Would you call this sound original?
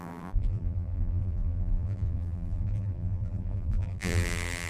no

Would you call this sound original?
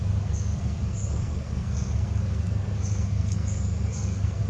no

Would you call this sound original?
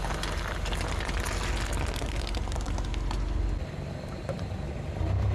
yes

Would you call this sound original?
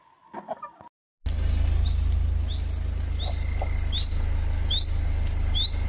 yes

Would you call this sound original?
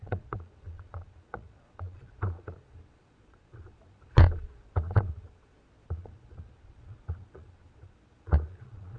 no